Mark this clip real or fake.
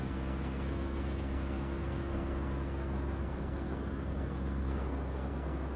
fake